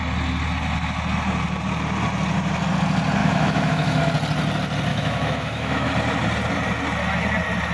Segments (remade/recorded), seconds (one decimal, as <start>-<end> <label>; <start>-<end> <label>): 0.0-3.2 recorded; 3.2-4.0 remade; 4.0-4.9 recorded; 4.9-5.9 remade; 5.9-7.7 recorded